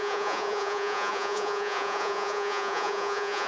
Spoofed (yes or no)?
yes